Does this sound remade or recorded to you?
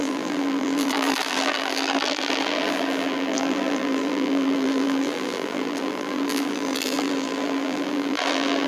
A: remade